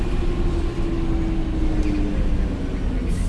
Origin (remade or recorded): recorded